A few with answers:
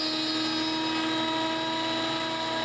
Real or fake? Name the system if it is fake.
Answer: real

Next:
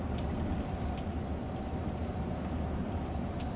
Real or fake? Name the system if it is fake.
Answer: real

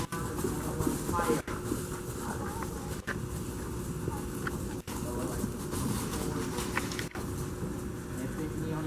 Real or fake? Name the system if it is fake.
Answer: real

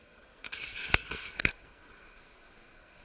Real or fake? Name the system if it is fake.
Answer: fake, codec, SNAC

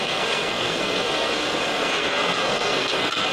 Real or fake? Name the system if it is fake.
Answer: fake, codec, SNAC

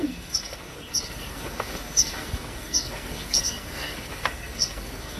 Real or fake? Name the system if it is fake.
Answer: fake, codec, SNAC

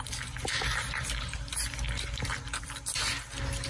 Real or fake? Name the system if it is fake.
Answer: real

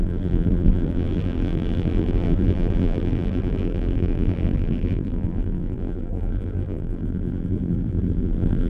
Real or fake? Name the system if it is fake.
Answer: fake, vocoder, BigVGAN v2